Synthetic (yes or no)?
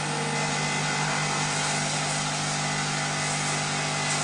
no